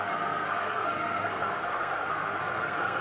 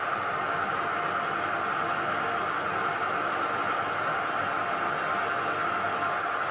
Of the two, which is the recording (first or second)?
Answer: second